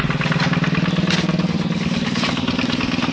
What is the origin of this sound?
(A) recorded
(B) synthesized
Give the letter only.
A